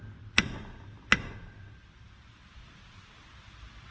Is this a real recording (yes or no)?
no